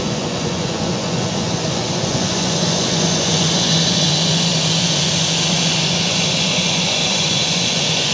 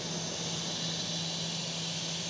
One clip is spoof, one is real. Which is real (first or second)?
second